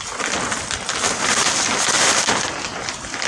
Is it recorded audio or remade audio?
recorded